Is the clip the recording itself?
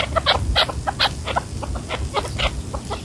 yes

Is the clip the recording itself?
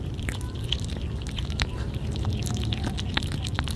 yes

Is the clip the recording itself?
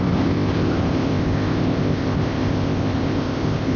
no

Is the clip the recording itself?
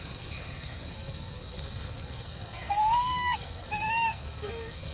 no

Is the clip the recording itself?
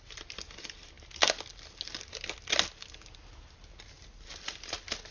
yes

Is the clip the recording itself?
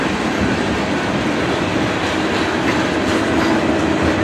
yes